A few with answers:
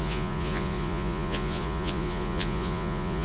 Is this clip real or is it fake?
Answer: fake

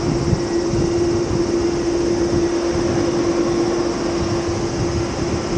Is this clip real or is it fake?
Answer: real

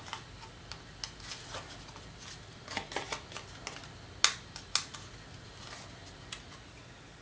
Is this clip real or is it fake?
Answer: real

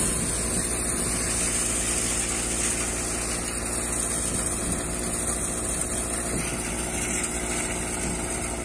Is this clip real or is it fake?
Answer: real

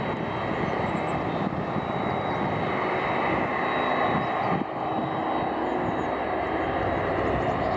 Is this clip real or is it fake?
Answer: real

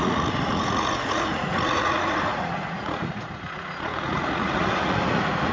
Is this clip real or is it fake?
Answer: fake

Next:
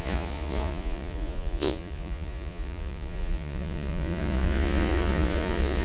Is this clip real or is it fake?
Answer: fake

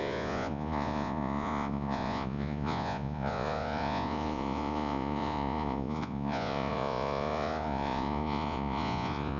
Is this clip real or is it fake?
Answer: fake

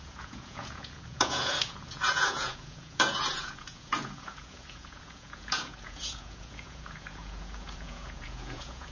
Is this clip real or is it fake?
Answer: fake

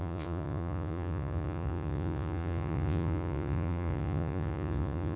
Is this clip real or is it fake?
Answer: fake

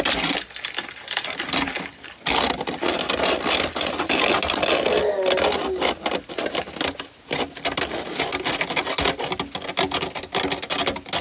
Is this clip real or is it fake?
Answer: real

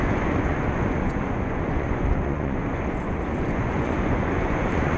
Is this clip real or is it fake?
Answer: fake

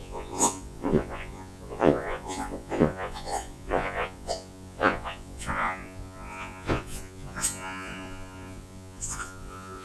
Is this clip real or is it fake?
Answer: fake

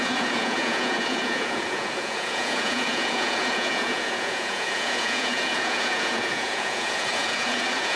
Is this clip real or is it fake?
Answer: fake